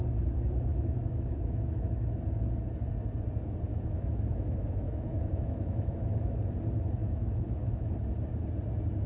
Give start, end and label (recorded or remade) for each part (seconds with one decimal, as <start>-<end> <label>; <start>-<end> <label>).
0.0-0.7 recorded; 0.7-2.2 remade; 2.2-3.7 recorded; 3.7-6.4 remade; 6.4-7.0 recorded; 7.0-7.9 remade; 7.9-9.1 recorded